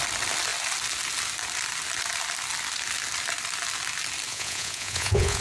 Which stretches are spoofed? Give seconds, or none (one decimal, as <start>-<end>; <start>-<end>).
4.3-5.4